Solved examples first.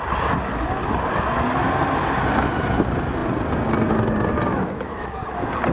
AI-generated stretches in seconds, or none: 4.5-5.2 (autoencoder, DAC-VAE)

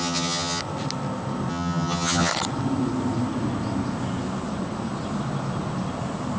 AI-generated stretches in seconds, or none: 0.0-0.6 (vocoder, HiFi-GAN); 1.5-2.3

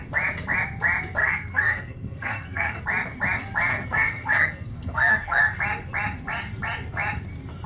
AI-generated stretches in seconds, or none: 1.2-2.8 (codec, SNAC); 3.7-5.4

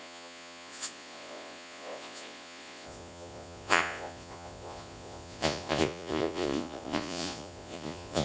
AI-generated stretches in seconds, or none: 0.0-8.2 (vocoder, Vocos)